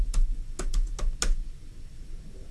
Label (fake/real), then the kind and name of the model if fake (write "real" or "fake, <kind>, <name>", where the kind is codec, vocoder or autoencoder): real